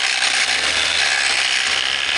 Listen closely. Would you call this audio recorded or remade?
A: recorded